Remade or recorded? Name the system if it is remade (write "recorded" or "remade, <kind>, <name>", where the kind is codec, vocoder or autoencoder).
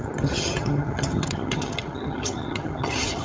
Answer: remade, vocoder, HiFi-GAN